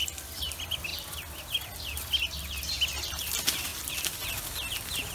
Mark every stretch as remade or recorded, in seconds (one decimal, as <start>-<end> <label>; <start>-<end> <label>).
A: 0.0-5.1 recorded